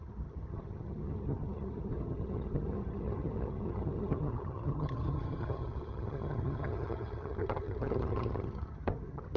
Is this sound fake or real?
fake